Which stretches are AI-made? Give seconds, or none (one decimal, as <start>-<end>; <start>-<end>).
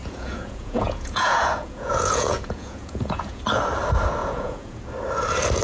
0.0-3.4; 4.2-4.8